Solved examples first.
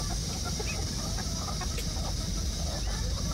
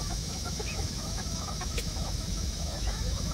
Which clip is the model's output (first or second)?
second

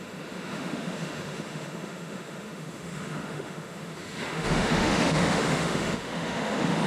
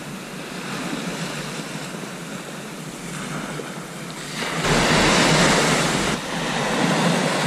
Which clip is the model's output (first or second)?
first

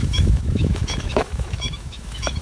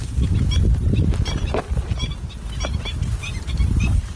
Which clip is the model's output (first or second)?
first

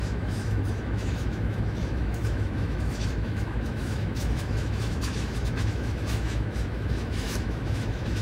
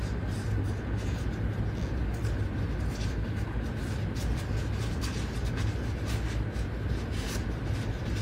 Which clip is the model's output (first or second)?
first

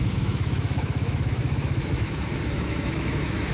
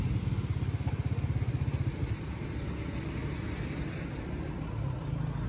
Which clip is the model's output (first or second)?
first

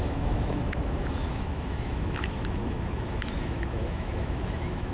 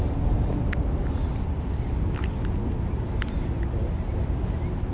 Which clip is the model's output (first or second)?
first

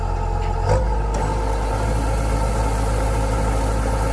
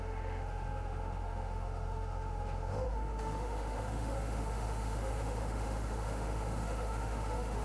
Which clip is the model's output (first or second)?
second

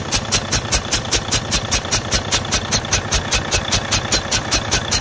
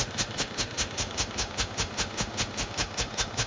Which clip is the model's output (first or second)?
second